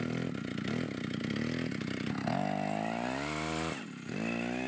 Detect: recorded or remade recorded